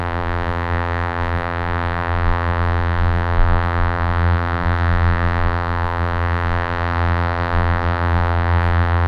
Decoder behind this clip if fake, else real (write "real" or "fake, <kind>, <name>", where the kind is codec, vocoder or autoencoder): fake, vocoder, BigVGAN v2